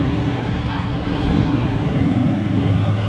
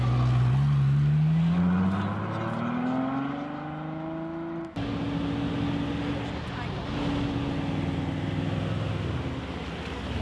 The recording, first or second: second